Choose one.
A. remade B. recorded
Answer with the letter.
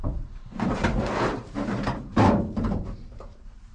A